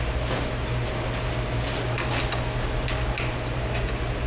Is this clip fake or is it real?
real